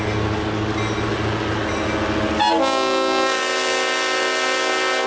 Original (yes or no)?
yes